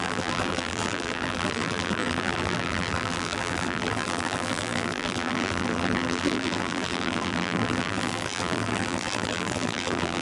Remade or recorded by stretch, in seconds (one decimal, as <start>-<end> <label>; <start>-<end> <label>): 0.0-10.2 remade